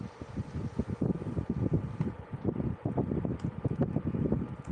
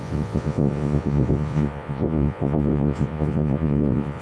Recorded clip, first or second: first